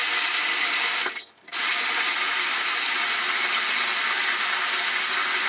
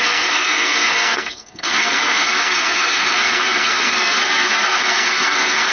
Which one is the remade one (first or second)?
second